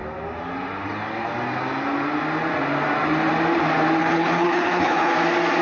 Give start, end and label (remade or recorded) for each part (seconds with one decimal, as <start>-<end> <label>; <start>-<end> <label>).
0.0-4.0 recorded; 4.0-5.1 remade; 5.1-5.6 recorded